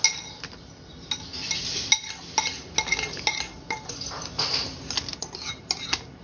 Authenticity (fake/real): real